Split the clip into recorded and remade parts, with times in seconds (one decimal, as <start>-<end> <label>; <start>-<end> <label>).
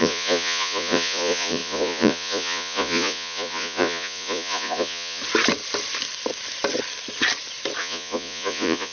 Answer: 0.0-5.2 remade; 5.2-7.8 recorded; 7.8-8.9 remade